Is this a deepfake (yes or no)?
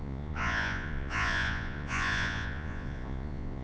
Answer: yes